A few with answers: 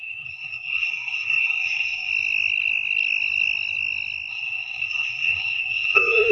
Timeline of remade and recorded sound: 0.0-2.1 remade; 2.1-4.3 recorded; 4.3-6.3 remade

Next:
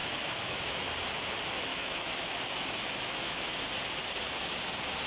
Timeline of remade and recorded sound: 0.0-0.9 remade; 0.9-1.7 recorded; 1.7-3.4 remade; 3.4-5.1 recorded